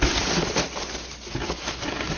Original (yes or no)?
yes